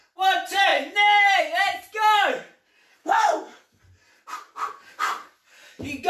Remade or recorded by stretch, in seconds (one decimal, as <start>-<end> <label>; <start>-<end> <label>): 0.0-3.0 recorded; 3.0-3.8 remade; 3.8-6.1 recorded